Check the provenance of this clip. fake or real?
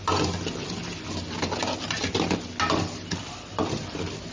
real